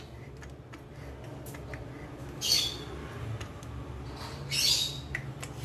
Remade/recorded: recorded